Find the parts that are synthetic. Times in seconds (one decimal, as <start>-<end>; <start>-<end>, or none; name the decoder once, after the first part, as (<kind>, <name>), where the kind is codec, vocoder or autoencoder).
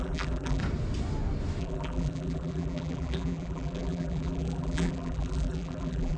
0.0-0.6 (vocoder, BigVGAN v2); 1.6-6.2